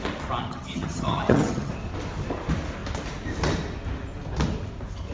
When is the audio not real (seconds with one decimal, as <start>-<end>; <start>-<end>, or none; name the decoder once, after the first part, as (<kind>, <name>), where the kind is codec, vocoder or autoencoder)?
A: 0.4-1.7 (vocoder, HiFi-GAN)